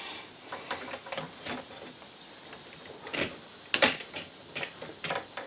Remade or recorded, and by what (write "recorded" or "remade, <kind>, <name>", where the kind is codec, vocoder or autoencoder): recorded